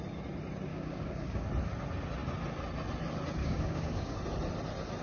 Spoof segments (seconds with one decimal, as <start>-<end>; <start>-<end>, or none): 0.7-1.5; 3.4-4.2